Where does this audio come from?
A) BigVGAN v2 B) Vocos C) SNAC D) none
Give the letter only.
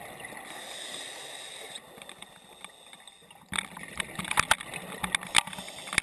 D